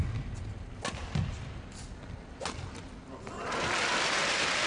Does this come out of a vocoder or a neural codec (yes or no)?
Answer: no